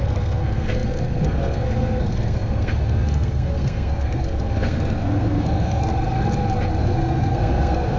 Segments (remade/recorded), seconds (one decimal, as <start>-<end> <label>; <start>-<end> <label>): 0.0-5.9 remade; 5.9-6.8 recorded; 6.8-8.0 remade

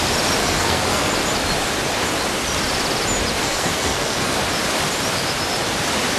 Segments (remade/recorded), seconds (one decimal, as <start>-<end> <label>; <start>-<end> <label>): 0.0-0.4 recorded; 0.4-1.1 remade; 1.1-3.4 recorded; 3.4-4.4 remade; 4.4-6.2 recorded

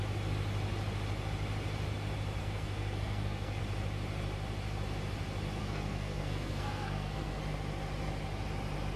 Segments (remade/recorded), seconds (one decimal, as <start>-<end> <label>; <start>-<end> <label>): 0.0-2.4 recorded; 2.4-3.6 remade; 3.6-5.6 recorded; 5.6-7.4 remade; 7.4-9.0 recorded